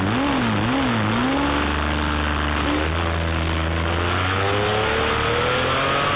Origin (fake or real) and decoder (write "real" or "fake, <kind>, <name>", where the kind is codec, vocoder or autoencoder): real